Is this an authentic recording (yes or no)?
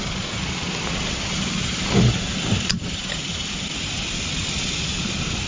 yes